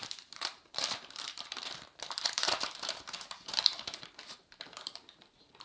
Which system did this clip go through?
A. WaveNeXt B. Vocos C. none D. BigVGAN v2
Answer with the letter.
D